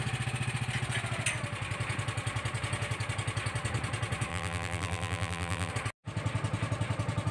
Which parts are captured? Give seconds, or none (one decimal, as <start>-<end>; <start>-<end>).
0.0-4.3; 5.7-7.3

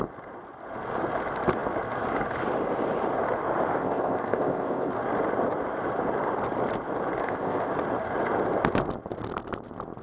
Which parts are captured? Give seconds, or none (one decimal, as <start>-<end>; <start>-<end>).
0.0-3.8; 4.9-7.2; 7.7-10.0